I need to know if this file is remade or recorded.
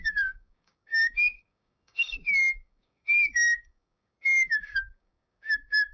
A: remade